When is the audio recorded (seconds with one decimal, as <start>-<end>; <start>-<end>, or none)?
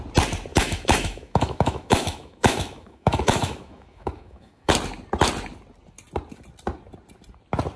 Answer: 0.0-0.5; 4.7-7.8